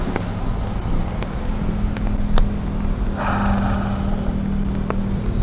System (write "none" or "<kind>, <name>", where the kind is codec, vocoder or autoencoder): none